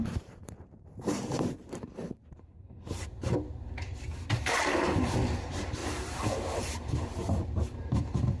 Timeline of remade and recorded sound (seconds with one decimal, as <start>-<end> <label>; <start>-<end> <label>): 0.0-8.4 remade